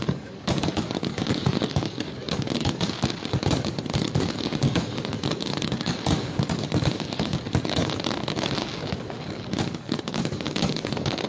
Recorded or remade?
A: remade